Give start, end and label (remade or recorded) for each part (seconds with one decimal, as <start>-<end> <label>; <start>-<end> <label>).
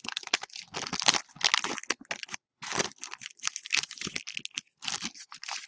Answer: 0.0-2.2 recorded; 2.2-2.7 remade; 2.7-5.7 recorded